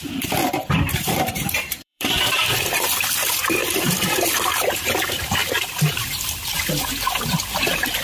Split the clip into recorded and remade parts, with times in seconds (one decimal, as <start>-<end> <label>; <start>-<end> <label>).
0.0-0.4 recorded; 0.4-2.1 remade; 2.1-3.6 recorded; 3.6-4.9 remade; 4.9-8.0 recorded